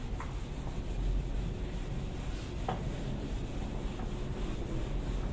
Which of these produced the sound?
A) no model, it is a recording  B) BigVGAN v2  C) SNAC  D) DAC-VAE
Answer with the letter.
A